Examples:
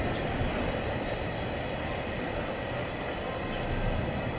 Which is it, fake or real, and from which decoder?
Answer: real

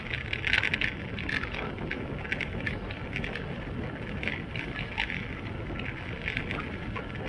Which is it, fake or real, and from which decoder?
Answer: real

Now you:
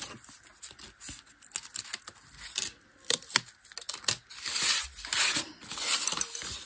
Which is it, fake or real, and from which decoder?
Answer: real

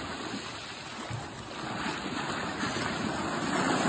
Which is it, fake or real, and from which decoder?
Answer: real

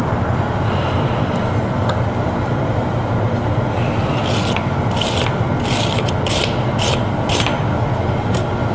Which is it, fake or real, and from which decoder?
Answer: real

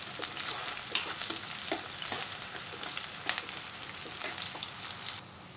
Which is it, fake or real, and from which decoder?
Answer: real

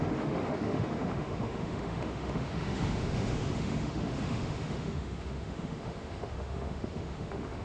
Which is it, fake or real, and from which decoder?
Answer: fake, autoencoder, DAC-VAE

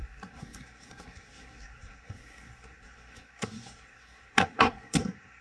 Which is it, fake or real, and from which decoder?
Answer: fake, codec, SNAC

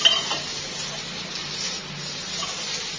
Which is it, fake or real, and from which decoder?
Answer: real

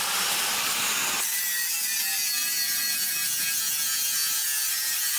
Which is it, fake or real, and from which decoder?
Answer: real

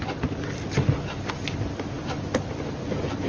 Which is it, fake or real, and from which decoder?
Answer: real